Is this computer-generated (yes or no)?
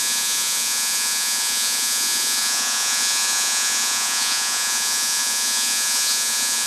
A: yes